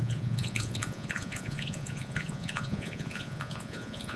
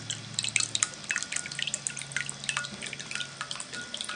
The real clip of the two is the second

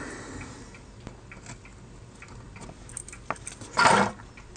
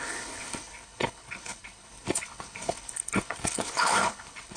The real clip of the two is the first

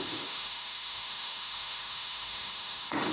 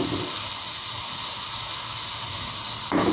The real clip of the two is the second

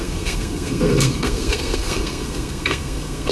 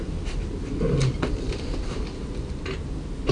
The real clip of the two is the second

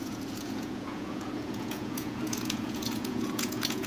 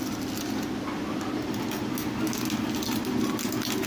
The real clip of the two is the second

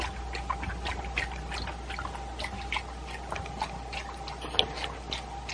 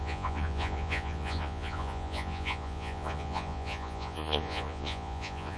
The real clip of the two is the first